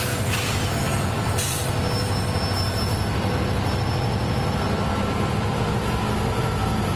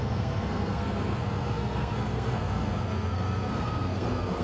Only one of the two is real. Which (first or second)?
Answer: first